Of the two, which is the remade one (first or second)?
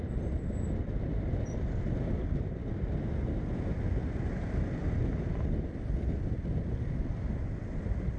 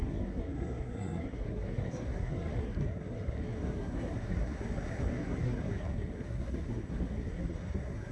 second